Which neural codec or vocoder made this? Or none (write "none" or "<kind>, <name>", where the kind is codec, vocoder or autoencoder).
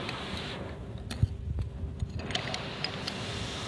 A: none